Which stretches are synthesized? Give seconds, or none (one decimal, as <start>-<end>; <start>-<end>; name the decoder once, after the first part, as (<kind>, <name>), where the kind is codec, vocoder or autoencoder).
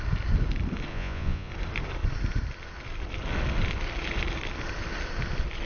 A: 0.9-1.5 (vocoder, Vocos)